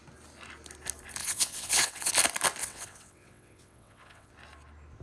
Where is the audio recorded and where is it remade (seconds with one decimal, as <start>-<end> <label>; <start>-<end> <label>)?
0.0-1.2 recorded; 1.2-2.1 remade; 2.1-2.6 recorded; 2.6-4.3 remade; 4.3-5.0 recorded